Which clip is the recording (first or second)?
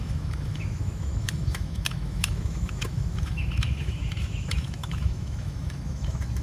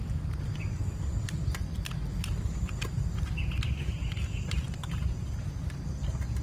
second